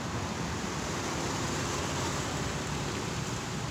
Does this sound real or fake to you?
real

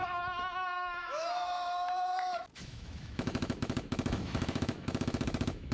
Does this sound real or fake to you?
fake